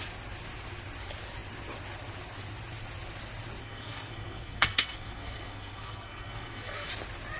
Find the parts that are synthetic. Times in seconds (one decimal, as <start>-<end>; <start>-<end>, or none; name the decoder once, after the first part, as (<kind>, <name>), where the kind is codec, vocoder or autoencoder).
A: 3.6-6.9 (codec, SNAC)